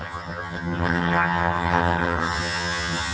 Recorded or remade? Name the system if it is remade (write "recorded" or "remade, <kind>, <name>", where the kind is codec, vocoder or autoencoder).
remade, vocoder, HiFi-GAN